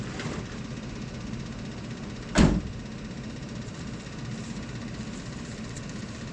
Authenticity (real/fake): real